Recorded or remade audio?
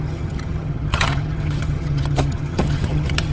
remade